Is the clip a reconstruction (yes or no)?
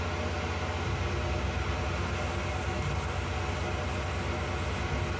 no